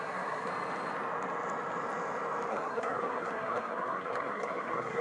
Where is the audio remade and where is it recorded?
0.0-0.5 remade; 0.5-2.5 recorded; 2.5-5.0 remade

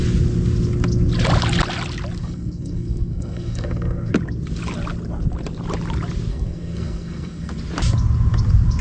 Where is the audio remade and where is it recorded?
0.0-2.2 recorded; 2.2-4.1 remade; 4.1-6.3 recorded; 6.3-7.5 remade; 7.5-8.8 recorded

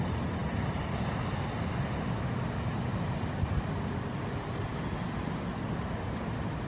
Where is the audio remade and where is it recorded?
0.0-6.7 recorded

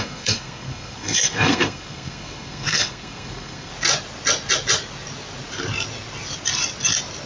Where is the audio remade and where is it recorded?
0.0-3.7 remade; 3.7-7.3 recorded